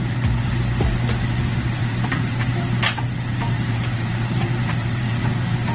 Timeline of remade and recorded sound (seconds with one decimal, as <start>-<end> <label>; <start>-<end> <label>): 0.0-1.8 recorded; 1.8-5.2 remade; 5.2-5.7 recorded